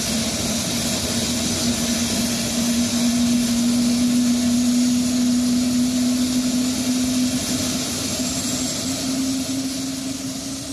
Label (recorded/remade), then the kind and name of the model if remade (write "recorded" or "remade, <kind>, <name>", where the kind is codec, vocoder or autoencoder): recorded